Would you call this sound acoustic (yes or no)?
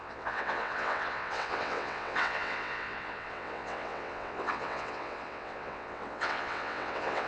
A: no